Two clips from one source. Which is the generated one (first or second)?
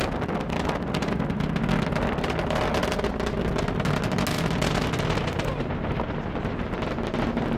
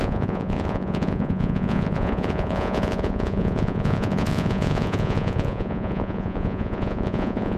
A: second